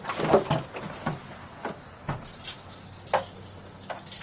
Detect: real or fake real